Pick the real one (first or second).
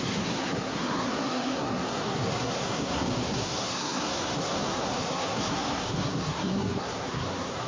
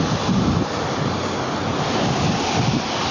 second